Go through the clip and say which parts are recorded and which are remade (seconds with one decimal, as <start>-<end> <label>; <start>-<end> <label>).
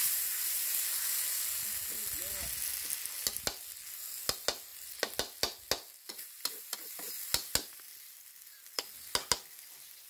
0.0-10.1 recorded